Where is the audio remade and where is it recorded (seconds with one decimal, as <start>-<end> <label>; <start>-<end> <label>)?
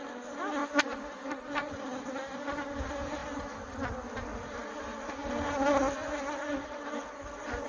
0.0-7.7 recorded